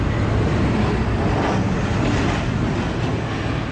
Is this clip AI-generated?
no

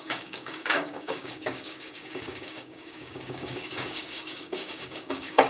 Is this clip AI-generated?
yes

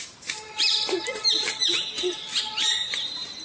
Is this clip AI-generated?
no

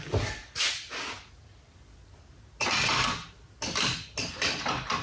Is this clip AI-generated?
no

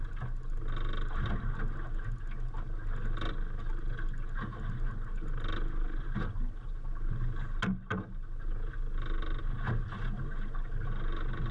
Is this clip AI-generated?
no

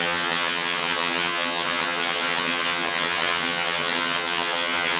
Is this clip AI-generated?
yes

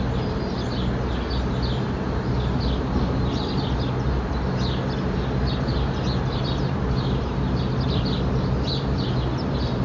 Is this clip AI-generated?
no